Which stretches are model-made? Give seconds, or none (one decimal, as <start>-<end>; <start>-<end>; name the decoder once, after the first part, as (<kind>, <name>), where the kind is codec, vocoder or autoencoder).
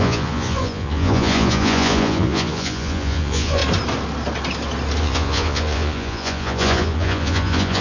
0.0-3.6 (vocoder, Vocos); 5.0-7.8